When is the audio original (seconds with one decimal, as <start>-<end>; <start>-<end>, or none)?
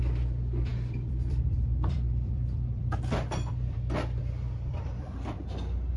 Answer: none